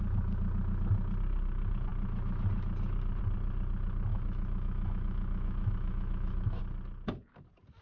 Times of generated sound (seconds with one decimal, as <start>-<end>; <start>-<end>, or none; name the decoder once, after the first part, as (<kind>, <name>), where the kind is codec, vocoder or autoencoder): 4.1-6.6 (autoencoder, DAC-VAE)